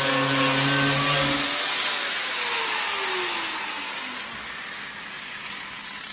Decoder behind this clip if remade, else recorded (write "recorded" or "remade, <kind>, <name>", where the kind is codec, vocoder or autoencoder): recorded